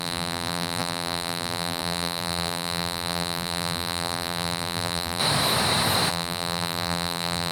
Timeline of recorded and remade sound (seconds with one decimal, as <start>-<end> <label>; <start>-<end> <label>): 0.0-5.2 remade; 5.2-6.1 recorded; 6.1-7.5 remade